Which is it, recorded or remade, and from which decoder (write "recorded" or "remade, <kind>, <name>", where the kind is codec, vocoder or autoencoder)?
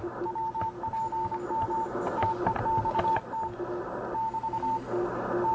recorded